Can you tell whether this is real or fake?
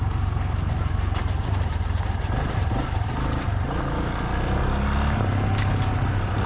real